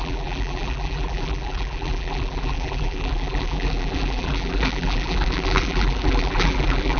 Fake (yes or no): yes